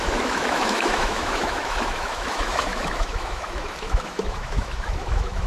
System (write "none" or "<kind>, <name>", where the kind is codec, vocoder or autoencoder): autoencoder, DAC-VAE